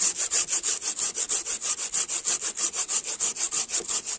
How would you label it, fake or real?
real